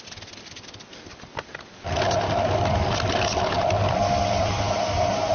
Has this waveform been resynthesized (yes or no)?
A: no